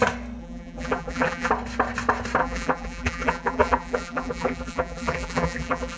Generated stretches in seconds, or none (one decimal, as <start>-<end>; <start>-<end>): 0.4-1.5; 2.4-6.0